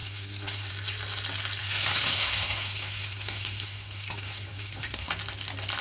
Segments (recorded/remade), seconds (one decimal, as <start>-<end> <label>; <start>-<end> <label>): 0.0-0.7 remade; 0.7-1.6 recorded; 1.6-5.1 remade; 5.1-5.8 recorded